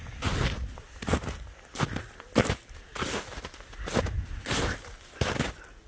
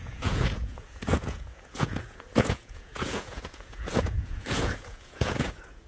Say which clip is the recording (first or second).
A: first